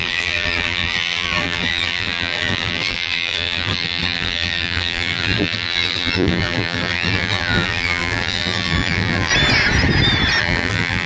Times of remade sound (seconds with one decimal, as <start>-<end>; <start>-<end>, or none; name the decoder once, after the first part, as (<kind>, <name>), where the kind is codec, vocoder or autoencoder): 0.0-9.3 (vocoder, BigVGAN v2); 10.4-11.1